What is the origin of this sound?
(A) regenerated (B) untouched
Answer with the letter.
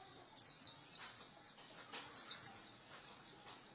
A